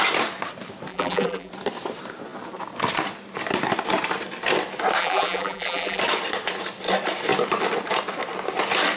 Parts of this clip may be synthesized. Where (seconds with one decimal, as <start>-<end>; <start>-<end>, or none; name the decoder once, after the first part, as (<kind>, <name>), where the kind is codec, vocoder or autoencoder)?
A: 0.9-1.5 (vocoder, BigVGAN v2); 5.0-6.0